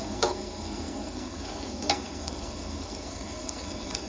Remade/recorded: remade